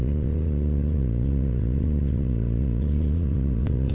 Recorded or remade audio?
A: remade